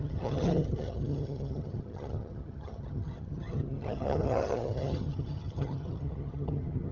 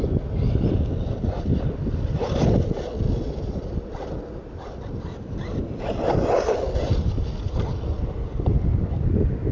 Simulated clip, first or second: first